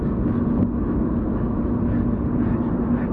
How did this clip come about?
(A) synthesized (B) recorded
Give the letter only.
B